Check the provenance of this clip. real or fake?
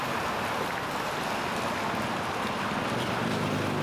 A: real